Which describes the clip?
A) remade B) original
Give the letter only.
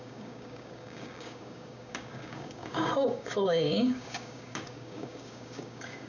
A